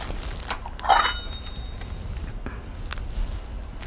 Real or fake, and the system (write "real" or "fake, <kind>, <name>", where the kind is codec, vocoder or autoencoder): real